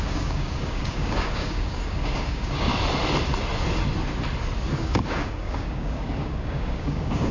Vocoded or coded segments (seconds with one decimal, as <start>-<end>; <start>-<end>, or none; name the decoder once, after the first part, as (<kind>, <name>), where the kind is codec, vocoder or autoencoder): 0.0-2.7 (codec, DAC); 4.8-7.3